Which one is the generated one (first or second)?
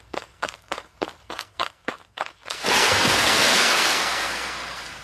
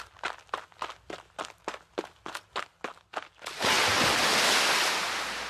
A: first